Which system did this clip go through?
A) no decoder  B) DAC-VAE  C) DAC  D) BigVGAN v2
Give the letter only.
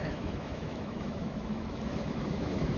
B